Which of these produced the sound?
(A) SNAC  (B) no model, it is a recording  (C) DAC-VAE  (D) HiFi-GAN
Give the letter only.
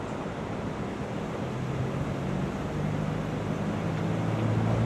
B